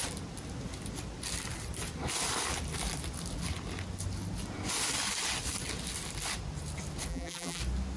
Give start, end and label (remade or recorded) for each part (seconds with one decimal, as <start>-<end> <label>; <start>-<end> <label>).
0.0-7.1 recorded; 7.1-7.6 remade; 7.6-8.0 recorded